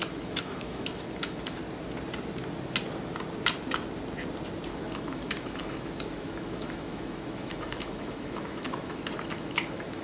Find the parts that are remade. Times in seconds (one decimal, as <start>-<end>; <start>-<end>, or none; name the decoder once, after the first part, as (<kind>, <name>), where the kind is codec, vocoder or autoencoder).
0.0-1.6 (autoencoder, DAC-VAE); 4.7-10.0